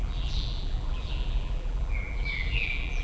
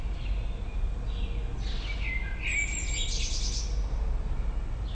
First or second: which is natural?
second